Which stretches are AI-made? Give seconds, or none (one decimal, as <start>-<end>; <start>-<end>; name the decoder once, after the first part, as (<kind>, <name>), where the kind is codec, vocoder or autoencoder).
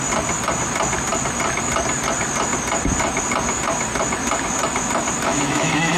5.3-6.0 (autoencoder, DAC-VAE)